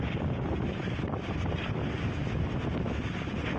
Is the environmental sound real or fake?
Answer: real